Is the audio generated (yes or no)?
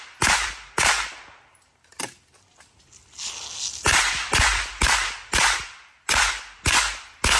no